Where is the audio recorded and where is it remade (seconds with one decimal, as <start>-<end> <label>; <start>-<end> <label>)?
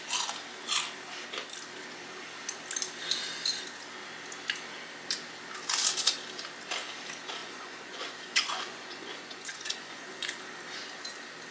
0.0-7.4 recorded; 7.4-10.4 remade; 10.4-11.5 recorded